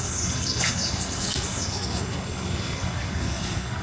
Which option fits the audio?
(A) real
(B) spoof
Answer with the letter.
B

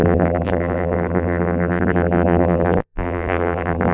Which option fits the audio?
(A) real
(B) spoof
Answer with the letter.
B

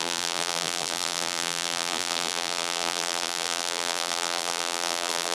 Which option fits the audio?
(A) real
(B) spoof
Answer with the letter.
B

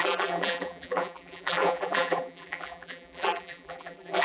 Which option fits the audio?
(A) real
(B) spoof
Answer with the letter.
B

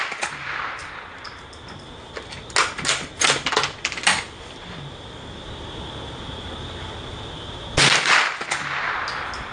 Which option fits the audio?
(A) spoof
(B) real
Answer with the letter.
B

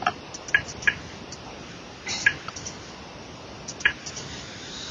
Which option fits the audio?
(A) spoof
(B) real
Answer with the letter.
A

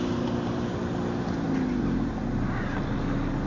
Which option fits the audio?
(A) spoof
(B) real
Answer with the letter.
B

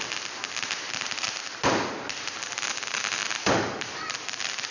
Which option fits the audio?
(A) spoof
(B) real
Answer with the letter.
B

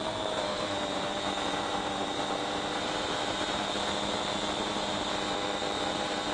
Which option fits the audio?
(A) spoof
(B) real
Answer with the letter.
A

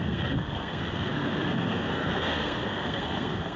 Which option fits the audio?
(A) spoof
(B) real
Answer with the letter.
A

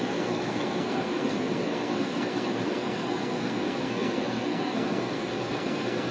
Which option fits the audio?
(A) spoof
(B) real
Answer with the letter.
A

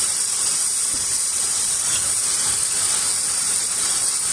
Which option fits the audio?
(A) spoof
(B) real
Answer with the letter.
A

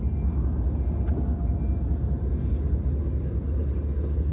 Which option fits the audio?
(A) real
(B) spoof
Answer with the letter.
A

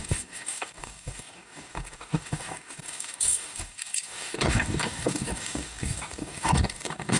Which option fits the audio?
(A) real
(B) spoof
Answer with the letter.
B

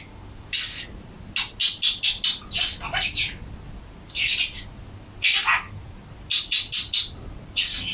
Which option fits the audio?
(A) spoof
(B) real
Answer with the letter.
B